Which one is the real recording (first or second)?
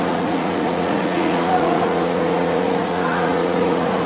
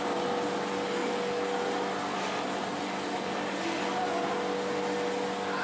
second